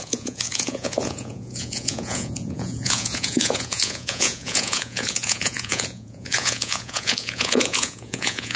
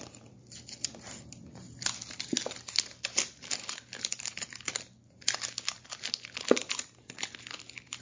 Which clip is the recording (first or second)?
second